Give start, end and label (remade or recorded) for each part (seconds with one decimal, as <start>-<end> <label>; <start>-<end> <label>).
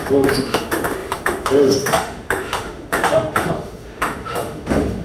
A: 0.0-5.0 remade